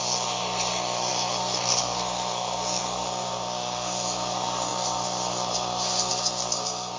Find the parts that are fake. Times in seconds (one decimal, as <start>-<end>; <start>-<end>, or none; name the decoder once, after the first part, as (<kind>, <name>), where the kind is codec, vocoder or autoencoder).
0.0-7.0 (codec, SNAC)